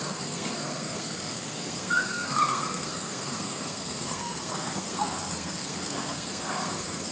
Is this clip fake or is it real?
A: fake